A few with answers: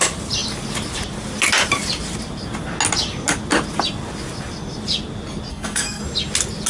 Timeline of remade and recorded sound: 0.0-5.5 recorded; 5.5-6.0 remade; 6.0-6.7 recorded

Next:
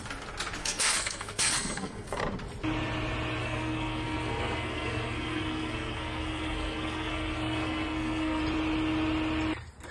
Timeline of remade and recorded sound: 0.0-0.6 recorded; 0.6-2.2 remade; 2.2-3.4 recorded; 3.4-8.4 remade; 8.4-9.9 recorded

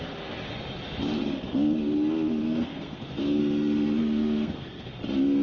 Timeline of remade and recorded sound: 0.0-2.4 recorded; 2.4-3.4 remade; 3.4-4.0 recorded; 4.0-5.0 remade; 5.0-5.4 recorded

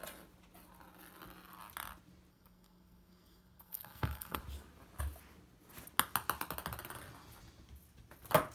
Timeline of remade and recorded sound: 0.0-2.3 recorded; 2.3-4.4 remade; 4.4-8.5 recorded